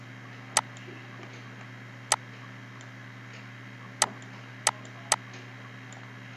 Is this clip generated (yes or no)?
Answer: no